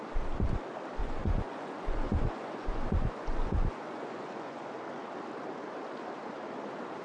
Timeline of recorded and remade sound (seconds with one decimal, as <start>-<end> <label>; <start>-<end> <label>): 0.0-1.0 recorded; 1.0-4.7 remade; 4.7-7.0 recorded